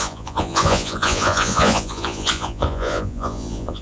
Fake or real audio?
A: fake